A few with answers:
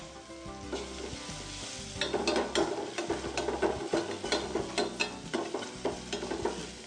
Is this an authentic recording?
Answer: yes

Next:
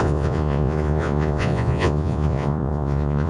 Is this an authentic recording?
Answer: no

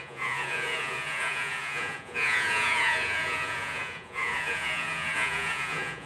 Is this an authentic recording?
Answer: no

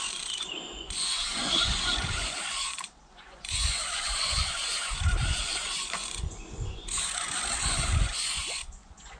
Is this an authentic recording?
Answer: no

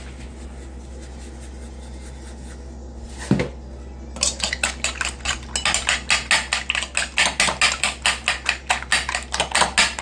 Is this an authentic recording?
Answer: yes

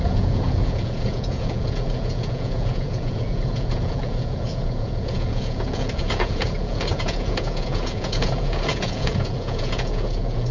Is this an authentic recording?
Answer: no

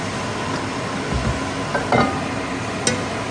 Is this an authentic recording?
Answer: yes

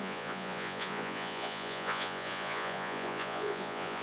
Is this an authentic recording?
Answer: no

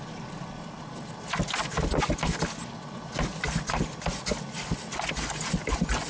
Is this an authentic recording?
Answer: yes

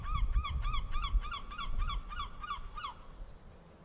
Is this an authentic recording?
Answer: yes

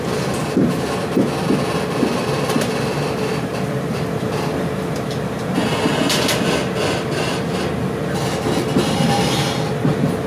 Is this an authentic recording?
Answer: yes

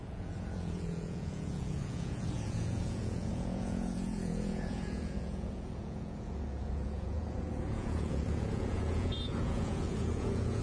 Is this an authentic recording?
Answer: no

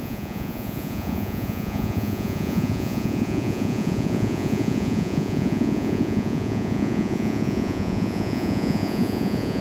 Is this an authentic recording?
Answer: no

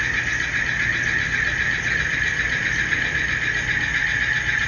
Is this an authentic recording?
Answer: yes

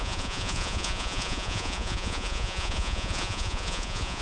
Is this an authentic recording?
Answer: no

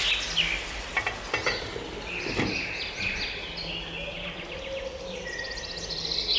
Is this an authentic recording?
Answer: yes